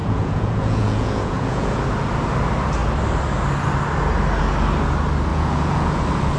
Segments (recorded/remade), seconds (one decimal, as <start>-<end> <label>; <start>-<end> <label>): 0.0-1.8 remade; 1.8-5.3 recorded; 5.3-6.0 remade; 6.0-6.4 recorded